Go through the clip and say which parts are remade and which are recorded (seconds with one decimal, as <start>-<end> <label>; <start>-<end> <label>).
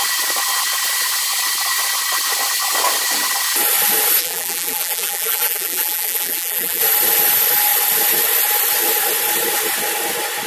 0.0-4.2 recorded; 4.2-6.8 remade; 6.8-10.5 recorded